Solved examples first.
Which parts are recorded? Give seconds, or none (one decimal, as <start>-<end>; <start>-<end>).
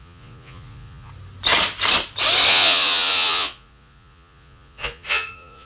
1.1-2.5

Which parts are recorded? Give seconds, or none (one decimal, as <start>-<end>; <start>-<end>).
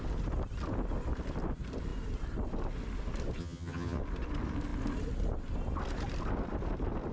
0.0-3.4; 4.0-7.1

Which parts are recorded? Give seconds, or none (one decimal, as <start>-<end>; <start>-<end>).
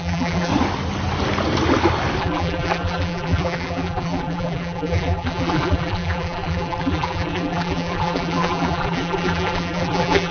0.5-2.2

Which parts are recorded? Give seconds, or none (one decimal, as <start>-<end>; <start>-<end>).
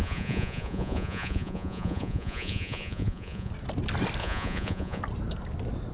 3.5-4.2; 5.0-5.9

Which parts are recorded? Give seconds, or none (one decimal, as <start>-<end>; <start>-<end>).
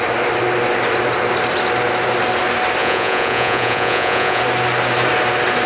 0.0-2.8; 4.4-5.7